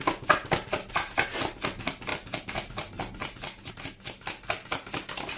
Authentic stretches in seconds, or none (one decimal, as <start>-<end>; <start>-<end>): 0.0-5.4

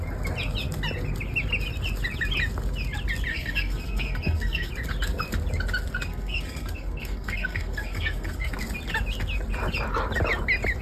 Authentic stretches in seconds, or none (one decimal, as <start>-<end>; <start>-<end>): 0.0-3.3; 4.7-6.1; 8.5-10.8

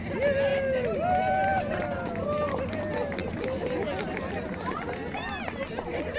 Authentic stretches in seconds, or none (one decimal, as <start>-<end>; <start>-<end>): 0.0-6.2

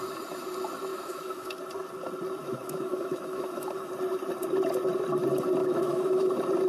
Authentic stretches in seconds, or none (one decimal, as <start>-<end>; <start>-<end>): 0.0-0.9; 1.5-2.4; 3.9-5.6; 6.3-6.7

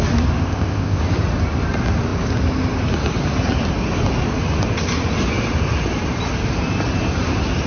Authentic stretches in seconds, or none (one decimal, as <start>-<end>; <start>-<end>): 0.0-0.4; 1.0-7.7

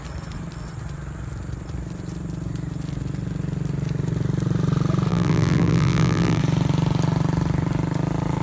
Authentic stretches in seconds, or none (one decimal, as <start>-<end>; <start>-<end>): 0.0-5.1; 6.4-8.4

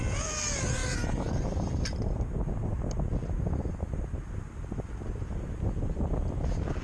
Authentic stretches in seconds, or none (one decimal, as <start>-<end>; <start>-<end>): 0.0-0.8; 2.0-6.8